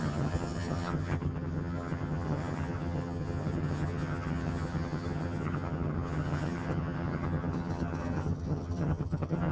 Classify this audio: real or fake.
fake